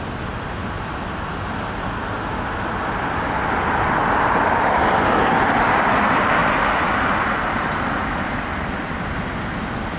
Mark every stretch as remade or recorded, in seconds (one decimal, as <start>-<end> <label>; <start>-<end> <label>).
0.0-4.0 recorded; 4.0-4.8 remade; 4.8-6.4 recorded; 6.4-7.7 remade; 7.7-8.8 recorded; 8.8-9.3 remade; 9.3-10.0 recorded